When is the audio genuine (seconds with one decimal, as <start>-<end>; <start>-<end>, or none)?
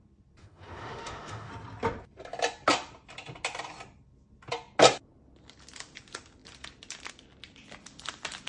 0.0-0.4; 1.5-8.5